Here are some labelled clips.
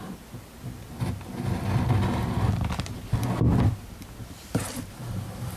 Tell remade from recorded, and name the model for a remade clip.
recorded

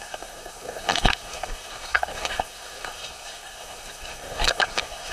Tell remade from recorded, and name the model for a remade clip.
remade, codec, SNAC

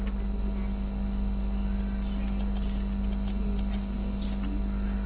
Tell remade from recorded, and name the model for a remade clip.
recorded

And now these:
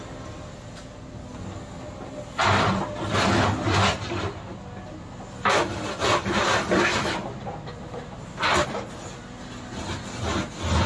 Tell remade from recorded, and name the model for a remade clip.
recorded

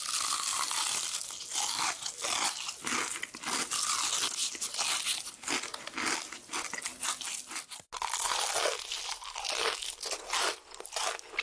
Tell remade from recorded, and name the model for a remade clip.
recorded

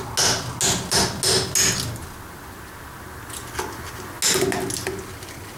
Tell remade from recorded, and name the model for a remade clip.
recorded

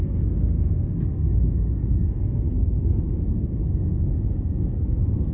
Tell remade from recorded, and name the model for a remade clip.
remade, codec, SNAC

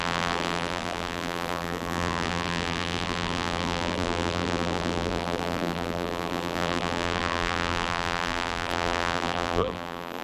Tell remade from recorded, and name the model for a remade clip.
remade, vocoder, BigVGAN v2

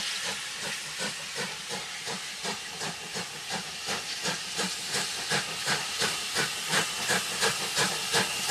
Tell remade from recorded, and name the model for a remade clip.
recorded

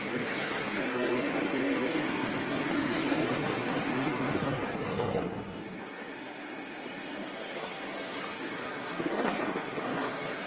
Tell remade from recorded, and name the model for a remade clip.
remade, codec, SNAC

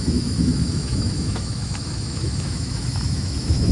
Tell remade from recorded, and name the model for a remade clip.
remade, autoencoder, DAC-VAE